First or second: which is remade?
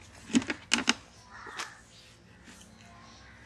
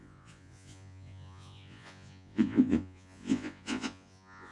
second